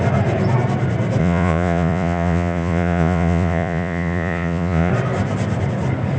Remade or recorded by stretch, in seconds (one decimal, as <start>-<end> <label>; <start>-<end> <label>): 0.0-1.2 recorded; 1.2-4.9 remade; 4.9-6.2 recorded